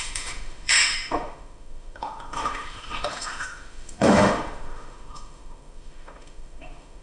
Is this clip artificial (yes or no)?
yes